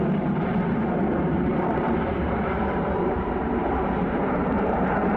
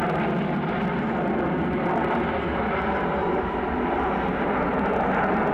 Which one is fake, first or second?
first